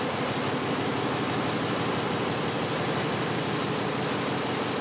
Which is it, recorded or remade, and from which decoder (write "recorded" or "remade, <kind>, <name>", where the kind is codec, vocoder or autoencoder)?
recorded